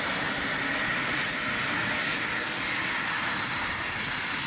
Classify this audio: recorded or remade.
recorded